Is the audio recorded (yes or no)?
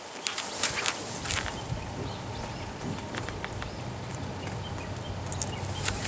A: yes